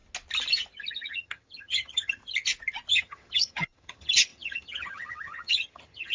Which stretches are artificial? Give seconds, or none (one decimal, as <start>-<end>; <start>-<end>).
0.9-2.2; 2.9-6.1